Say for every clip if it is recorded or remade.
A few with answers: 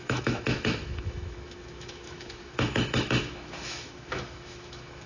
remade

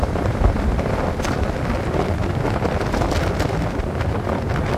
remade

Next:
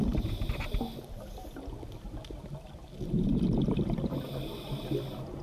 recorded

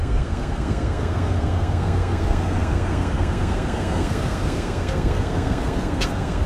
remade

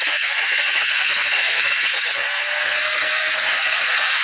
remade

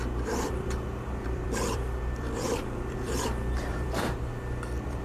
remade